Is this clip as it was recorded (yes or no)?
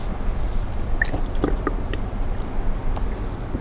yes